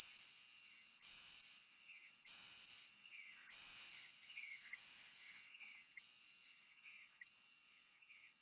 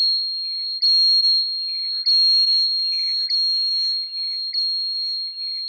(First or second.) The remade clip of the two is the first